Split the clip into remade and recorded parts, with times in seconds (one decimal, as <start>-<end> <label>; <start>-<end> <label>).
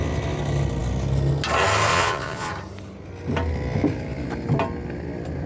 0.0-1.9 recorded; 1.9-2.5 remade; 2.5-5.5 recorded